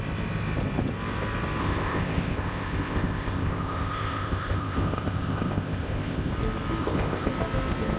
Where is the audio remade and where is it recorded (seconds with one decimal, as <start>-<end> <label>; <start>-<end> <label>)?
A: 0.0-1.6 recorded; 1.6-6.3 remade; 6.3-6.8 recorded; 6.8-7.3 remade; 7.3-8.0 recorded